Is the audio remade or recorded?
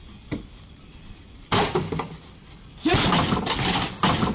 recorded